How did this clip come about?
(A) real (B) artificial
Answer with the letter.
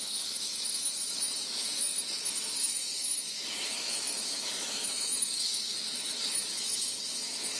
B